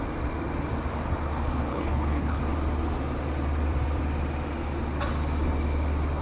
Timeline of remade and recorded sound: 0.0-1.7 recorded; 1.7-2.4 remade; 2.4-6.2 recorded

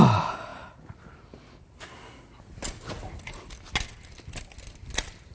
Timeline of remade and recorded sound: 0.0-5.3 recorded

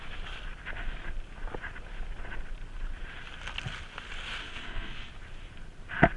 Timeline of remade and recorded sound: 0.0-4.4 recorded; 4.4-5.1 remade; 5.1-6.2 recorded

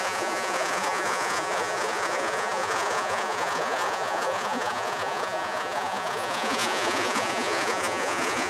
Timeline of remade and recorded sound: 0.0-8.5 remade

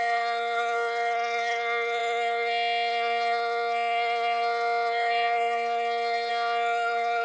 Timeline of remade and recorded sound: 0.0-7.2 remade